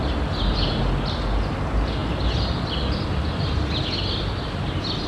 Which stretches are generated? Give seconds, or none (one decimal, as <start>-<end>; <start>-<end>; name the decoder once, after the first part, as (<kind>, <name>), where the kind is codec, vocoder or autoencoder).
none